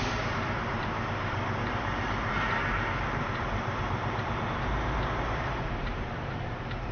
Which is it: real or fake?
fake